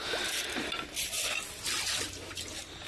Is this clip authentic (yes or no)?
yes